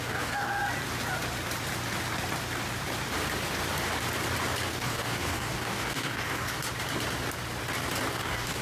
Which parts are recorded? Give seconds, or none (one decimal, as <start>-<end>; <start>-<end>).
0.6-4.7; 6.6-8.1